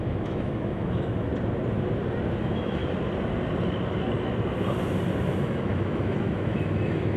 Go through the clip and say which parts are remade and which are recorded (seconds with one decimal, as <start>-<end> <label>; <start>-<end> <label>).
0.0-1.3 remade; 1.3-2.4 recorded; 2.4-2.8 remade; 2.8-5.3 recorded; 5.3-7.2 remade